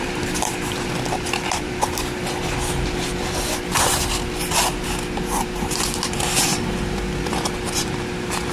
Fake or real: fake